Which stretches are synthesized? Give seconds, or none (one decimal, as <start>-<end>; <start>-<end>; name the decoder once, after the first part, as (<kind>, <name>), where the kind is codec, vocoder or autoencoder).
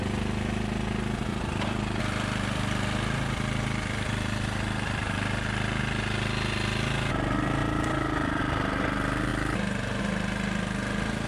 1.3-5.8 (vocoder, BigVGAN v2); 7.6-8.4